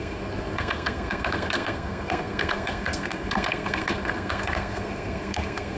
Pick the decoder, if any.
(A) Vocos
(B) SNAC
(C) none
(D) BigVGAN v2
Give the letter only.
B